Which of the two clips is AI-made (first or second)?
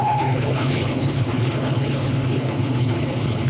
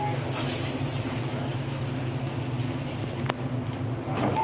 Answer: first